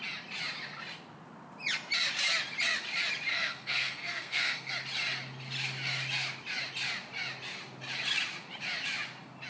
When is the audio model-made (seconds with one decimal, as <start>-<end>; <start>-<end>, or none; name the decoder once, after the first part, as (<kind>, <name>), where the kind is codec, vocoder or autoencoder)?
3.3-4.7 (codec, SNAC)